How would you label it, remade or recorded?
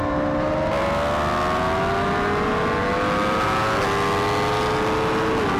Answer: recorded